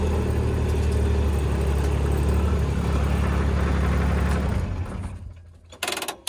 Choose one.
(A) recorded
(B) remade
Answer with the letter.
A